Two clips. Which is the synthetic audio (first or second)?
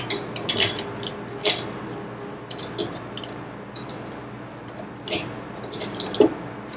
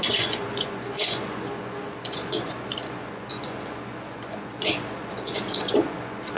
second